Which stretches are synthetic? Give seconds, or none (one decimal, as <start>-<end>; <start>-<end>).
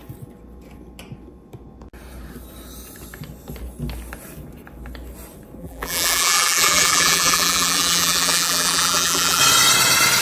5.6-9.4